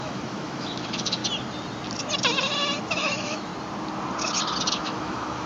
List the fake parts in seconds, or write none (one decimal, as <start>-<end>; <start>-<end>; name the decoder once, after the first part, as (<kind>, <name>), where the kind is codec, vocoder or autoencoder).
0.0-1.2 (autoencoder, DAC-VAE); 2.8-3.5; 4.7-5.5